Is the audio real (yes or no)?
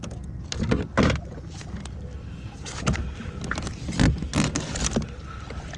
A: yes